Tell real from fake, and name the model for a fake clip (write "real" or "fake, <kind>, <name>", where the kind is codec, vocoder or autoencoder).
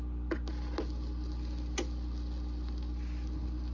real